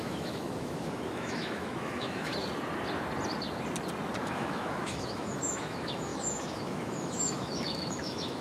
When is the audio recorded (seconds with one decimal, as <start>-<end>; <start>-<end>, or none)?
2.3-4.2